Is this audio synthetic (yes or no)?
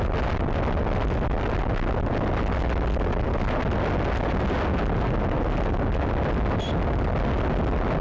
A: no